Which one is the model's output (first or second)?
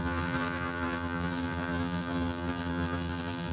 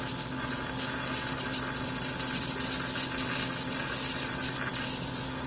first